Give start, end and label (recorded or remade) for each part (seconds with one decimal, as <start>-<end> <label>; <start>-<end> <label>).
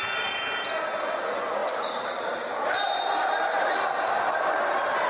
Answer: 0.0-5.1 recorded